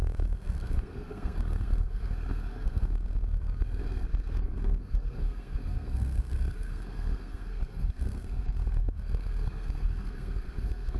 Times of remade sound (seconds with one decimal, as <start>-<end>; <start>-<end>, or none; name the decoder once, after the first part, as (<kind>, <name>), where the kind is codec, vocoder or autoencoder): 0.0-11.0 (codec, SNAC)